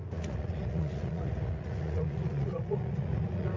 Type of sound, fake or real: fake